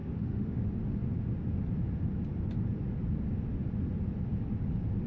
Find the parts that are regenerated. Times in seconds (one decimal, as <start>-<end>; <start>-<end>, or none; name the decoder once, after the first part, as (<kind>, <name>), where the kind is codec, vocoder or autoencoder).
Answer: 0.0-0.6 (autoencoder, DAC-VAE)